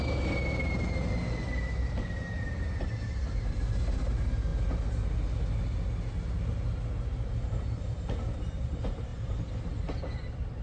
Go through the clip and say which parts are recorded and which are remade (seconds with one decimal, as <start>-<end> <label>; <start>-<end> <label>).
0.0-4.5 remade; 4.5-7.0 recorded; 7.0-9.1 remade; 9.1-10.6 recorded